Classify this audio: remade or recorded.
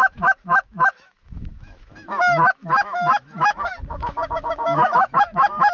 remade